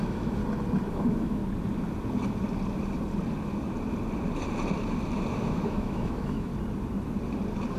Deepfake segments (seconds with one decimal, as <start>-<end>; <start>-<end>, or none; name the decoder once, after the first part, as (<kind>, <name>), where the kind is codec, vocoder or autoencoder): 0.0-0.4 (autoencoder, DAC-VAE); 0.9-1.4; 5.4-6.5